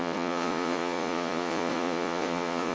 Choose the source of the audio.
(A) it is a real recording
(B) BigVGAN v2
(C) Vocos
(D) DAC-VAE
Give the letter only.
C